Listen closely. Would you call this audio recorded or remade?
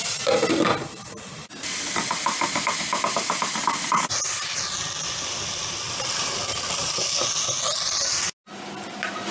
recorded